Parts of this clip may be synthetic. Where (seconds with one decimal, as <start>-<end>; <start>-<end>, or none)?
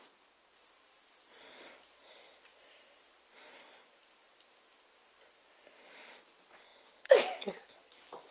none